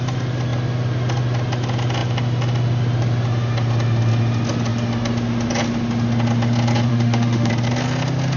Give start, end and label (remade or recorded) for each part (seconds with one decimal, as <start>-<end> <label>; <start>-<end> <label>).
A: 0.0-6.9 recorded; 6.9-7.5 remade; 7.5-8.4 recorded